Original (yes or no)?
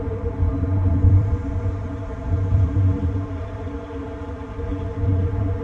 no